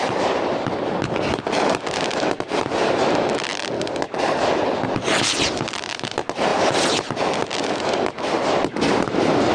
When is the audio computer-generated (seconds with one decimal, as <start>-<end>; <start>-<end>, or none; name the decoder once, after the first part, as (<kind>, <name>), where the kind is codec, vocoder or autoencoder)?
none